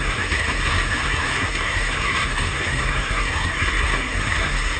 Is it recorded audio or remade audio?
remade